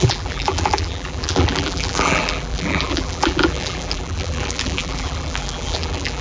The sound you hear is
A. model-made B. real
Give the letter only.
A